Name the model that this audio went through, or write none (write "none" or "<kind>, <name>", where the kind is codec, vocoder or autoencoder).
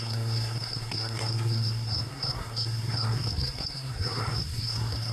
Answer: codec, SNAC